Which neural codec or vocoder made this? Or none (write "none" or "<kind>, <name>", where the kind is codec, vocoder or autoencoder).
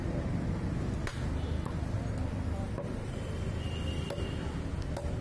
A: none